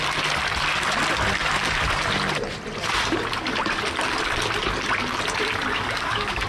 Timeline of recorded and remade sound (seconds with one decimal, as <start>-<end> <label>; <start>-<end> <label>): 0.0-5.7 recorded; 5.7-6.5 remade